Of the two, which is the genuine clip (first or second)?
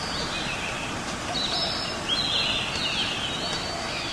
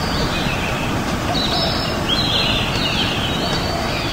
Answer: first